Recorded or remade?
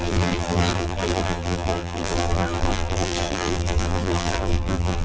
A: remade